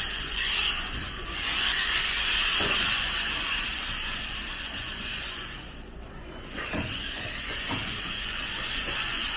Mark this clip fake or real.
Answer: fake